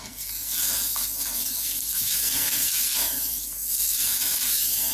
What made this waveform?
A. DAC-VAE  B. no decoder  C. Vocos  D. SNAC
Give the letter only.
D